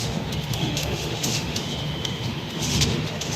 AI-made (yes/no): yes